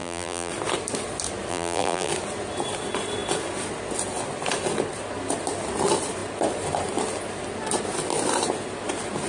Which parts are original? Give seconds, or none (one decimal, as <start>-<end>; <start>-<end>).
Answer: 0.5-1.5; 2.1-9.3